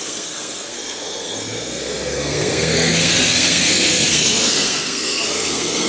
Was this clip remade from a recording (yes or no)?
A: yes